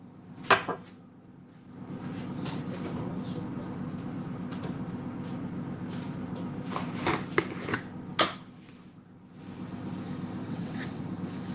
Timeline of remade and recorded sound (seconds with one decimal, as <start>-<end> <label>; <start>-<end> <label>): 0.0-10.4 recorded; 10.4-11.0 remade; 11.0-11.5 recorded